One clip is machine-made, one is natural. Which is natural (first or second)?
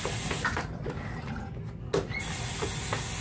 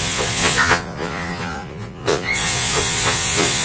first